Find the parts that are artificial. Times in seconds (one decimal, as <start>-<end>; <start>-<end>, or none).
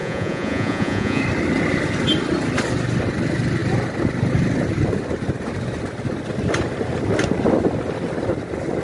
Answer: 0.0-1.2